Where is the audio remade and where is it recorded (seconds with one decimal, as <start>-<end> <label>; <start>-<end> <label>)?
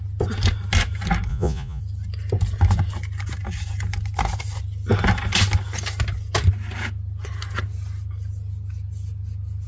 0.0-1.3 recorded; 1.3-1.8 remade; 1.8-9.7 recorded